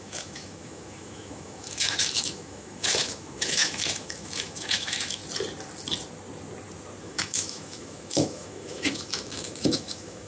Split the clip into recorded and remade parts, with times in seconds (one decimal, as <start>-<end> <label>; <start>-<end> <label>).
0.0-5.2 remade; 5.2-7.0 recorded; 7.0-10.3 remade